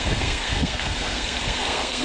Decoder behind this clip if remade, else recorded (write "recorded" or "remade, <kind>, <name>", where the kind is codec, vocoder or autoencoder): remade, codec, SNAC